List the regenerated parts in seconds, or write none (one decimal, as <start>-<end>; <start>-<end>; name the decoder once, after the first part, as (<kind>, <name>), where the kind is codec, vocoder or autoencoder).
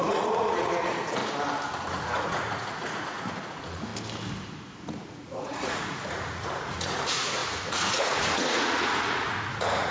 0.0-1.2 (vocoder, Vocos); 1.9-3.9; 4.8-9.9